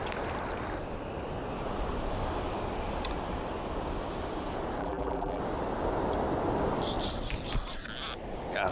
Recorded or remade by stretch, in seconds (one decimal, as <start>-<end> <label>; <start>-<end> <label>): 0.0-4.8 recorded; 4.8-5.4 remade; 5.4-8.7 recorded